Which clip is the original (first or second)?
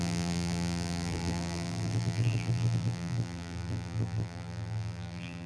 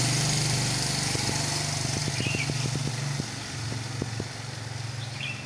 second